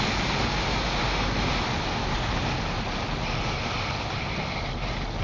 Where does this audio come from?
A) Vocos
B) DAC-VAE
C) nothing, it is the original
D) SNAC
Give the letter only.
C